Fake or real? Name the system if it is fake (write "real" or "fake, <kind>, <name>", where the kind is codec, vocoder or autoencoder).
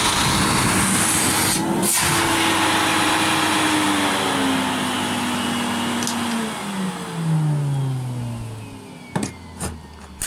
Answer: real